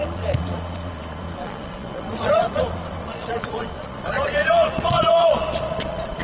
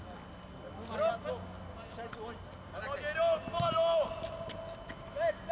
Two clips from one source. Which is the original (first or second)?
second